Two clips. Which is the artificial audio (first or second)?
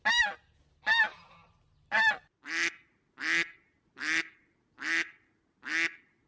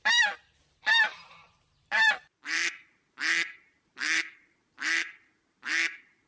second